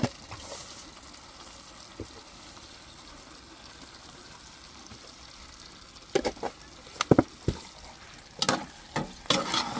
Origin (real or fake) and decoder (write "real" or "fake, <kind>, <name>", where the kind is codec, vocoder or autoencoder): real